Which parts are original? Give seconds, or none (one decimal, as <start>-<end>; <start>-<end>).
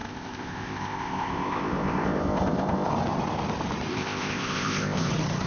2.9-3.9; 5.1-5.5